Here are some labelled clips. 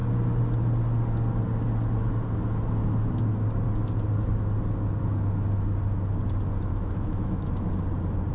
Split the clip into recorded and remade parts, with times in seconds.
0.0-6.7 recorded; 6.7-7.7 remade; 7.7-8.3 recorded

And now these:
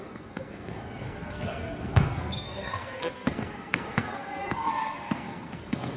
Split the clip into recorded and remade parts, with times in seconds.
0.0-6.0 remade

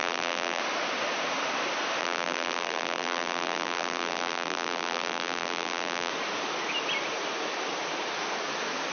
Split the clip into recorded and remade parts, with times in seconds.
0.0-0.6 remade; 0.6-2.0 recorded; 2.0-6.1 remade; 6.1-8.9 recorded

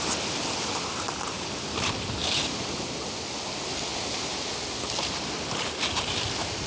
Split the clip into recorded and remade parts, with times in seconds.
0.0-2.2 recorded; 2.2-3.0 remade; 3.0-3.9 recorded; 3.9-4.4 remade; 4.4-6.7 recorded

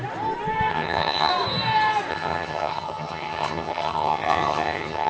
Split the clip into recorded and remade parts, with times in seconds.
0.0-0.7 recorded; 0.7-1.3 remade; 1.3-2.1 recorded; 2.1-5.1 remade

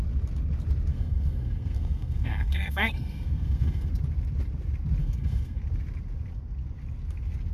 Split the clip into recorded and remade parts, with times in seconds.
0.0-0.9 recorded; 0.9-3.9 remade; 3.9-5.0 recorded; 5.0-5.6 remade; 5.6-7.5 recorded

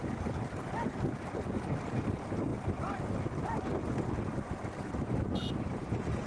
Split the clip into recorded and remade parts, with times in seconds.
0.0-6.3 recorded

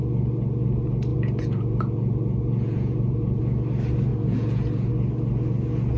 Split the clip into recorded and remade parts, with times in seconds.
0.0-1.1 recorded; 1.1-3.4 remade; 3.4-4.1 recorded; 4.1-4.9 remade; 4.9-6.0 recorded